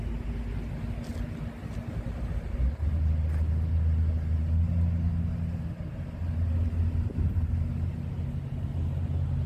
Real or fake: real